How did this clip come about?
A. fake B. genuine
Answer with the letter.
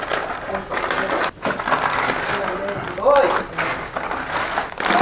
B